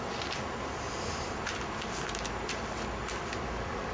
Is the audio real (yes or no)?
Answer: yes